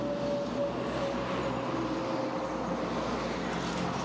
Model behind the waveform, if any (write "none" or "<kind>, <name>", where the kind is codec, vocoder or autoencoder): none